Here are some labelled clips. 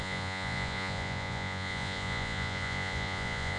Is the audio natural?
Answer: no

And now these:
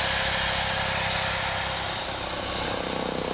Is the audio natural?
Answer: yes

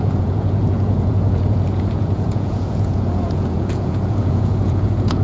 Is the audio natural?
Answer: no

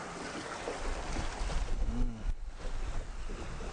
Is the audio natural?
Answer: yes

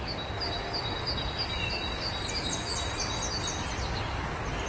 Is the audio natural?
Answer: yes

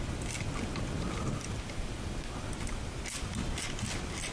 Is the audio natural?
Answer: yes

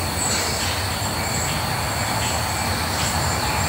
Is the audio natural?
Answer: yes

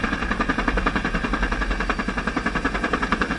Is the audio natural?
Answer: yes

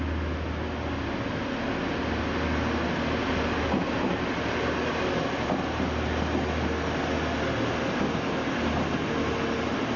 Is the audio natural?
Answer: yes